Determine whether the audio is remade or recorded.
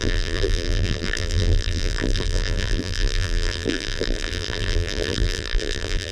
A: remade